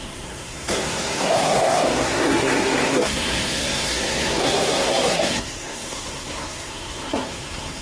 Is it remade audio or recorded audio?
remade